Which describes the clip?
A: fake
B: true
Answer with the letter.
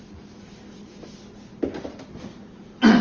B